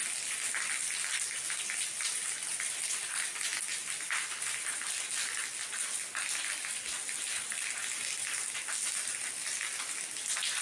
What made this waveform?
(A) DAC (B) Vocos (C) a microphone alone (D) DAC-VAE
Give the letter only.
C